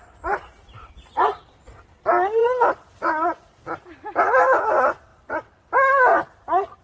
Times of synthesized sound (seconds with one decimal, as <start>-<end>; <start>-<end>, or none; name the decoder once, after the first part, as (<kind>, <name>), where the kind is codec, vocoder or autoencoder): none